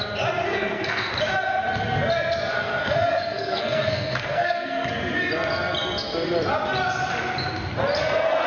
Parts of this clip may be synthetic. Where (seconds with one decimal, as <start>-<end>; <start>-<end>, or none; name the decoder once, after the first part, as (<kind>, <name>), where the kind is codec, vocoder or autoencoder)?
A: 0.5-1.1 (codec, SNAC); 2.5-4.9